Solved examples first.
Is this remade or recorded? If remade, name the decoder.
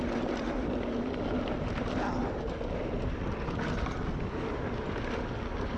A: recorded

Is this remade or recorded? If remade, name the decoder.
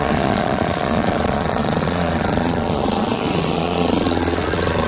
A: remade, vocoder, Vocos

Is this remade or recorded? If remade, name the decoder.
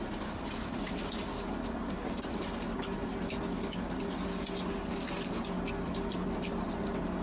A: recorded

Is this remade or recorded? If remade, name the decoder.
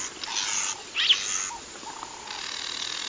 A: recorded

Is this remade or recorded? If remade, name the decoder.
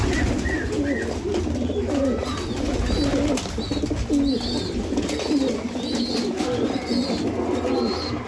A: recorded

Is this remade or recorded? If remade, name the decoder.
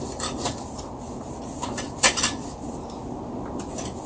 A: recorded